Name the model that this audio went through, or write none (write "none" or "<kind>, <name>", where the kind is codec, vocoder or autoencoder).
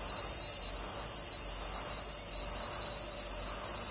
none